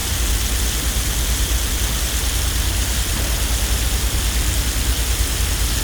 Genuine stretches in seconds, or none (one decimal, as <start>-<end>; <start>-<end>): 0.0-5.8